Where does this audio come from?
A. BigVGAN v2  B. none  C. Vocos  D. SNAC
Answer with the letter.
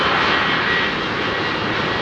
B